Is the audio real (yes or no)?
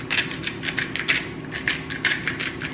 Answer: yes